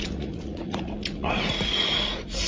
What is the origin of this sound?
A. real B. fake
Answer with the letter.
B